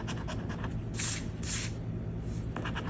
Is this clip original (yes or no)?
yes